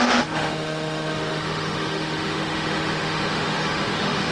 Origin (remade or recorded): remade